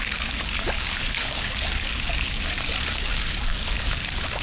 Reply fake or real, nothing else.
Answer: fake